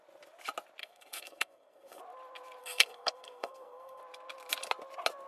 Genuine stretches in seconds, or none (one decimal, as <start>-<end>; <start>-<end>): 0.0-0.8; 2.0-2.6; 4.0-5.3